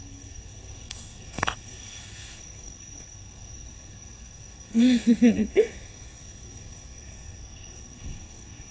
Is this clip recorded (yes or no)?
no